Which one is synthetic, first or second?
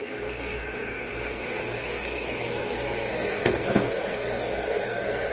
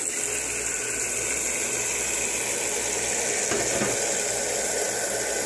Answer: first